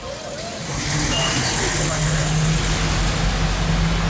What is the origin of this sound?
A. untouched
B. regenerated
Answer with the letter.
A